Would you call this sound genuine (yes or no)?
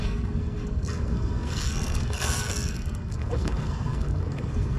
no